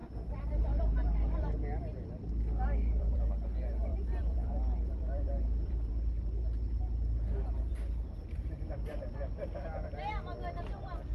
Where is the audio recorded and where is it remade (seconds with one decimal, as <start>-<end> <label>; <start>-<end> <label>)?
0.0-3.3 remade; 3.3-3.9 recorded; 3.9-5.9 remade; 5.9-11.1 recorded